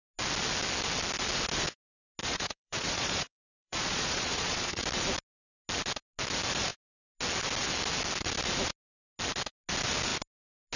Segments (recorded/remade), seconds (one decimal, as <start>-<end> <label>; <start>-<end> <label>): 0.0-2.2 recorded; 2.2-4.8 remade; 4.8-10.8 recorded